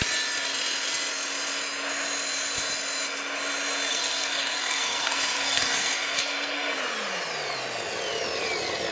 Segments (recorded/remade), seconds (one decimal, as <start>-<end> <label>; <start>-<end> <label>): 0.0-3.9 recorded; 3.9-6.8 remade; 6.8-8.9 recorded